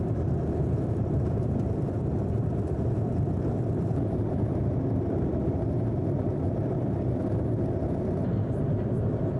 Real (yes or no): no